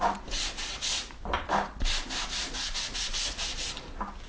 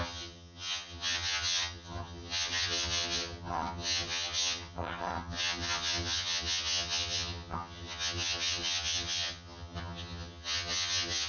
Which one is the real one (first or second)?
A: first